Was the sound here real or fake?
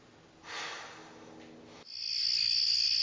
real